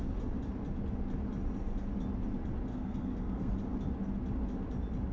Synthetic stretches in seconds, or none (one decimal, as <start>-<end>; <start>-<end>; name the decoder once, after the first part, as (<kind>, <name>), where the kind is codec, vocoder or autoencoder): 2.7-3.5 (codec, SNAC)